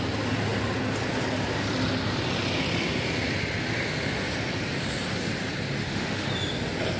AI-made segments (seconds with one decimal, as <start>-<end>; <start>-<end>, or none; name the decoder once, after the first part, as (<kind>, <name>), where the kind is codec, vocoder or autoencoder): 5.8-6.3 (autoencoder, DAC-VAE)